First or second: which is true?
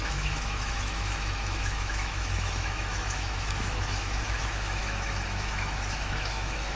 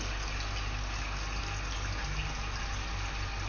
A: second